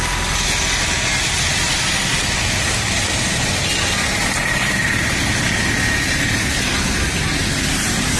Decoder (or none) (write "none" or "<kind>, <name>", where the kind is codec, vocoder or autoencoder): none